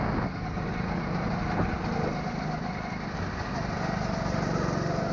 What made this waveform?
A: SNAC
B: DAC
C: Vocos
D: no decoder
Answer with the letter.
D